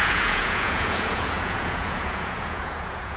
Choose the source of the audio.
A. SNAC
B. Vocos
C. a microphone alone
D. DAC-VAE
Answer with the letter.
B